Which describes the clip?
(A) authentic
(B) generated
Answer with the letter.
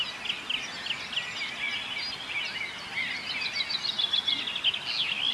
A